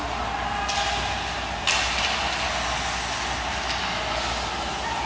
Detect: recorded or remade recorded